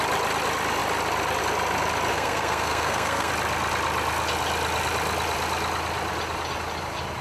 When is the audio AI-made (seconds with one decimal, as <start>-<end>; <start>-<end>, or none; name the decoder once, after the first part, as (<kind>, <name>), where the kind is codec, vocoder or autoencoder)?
2.1-3.3 (codec, SNAC)